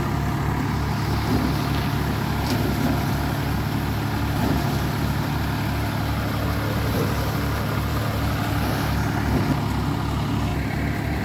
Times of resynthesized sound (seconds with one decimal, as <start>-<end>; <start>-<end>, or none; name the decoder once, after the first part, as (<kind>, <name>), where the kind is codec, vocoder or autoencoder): none